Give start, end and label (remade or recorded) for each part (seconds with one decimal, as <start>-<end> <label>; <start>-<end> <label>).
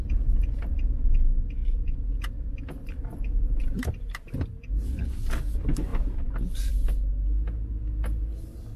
0.0-1.6 recorded; 1.6-2.6 remade; 2.6-8.8 recorded